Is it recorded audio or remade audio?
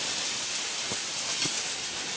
recorded